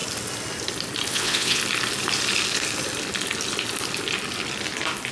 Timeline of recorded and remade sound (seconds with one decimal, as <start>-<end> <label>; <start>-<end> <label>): 0.0-1.1 recorded; 1.1-1.6 remade; 1.6-5.1 recorded